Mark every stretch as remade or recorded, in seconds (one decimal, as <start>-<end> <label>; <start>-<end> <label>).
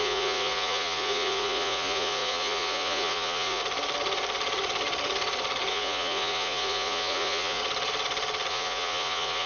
0.0-3.6 remade; 3.6-5.7 recorded; 5.7-7.6 remade; 7.6-8.5 recorded; 8.5-9.5 remade